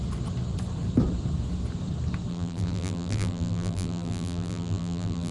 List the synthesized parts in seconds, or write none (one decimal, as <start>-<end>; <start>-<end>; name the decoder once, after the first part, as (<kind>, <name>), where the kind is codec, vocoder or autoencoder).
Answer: 2.3-5.3 (vocoder, BigVGAN v2)